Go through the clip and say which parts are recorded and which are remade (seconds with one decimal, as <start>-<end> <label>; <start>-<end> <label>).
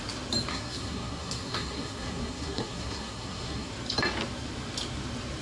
0.0-0.5 recorded; 0.5-3.7 remade; 3.7-5.4 recorded